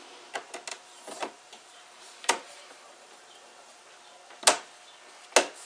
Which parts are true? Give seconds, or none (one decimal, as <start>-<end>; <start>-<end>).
0.0-0.7; 3.8-5.7

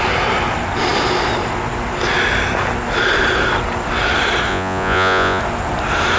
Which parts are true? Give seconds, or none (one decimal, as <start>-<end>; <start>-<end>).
0.0-4.5; 5.4-6.2

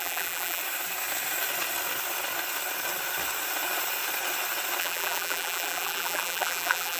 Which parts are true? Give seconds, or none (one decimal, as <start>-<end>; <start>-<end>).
0.6-4.8

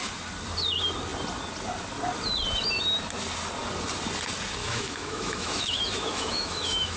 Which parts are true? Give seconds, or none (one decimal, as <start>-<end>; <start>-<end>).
0.0-4.6

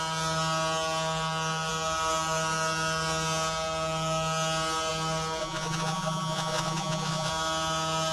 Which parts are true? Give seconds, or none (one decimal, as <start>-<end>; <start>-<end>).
0.0-5.4; 7.3-8.1

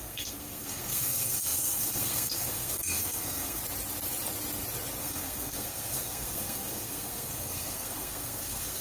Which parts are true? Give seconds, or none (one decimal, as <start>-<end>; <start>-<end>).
3.6-5.0

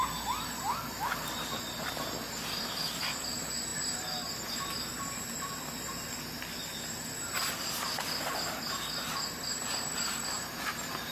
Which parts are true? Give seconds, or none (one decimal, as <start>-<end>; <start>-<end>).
0.0-11.1

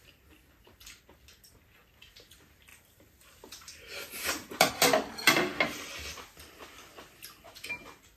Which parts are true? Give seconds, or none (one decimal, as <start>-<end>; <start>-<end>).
0.0-2.7; 4.7-8.2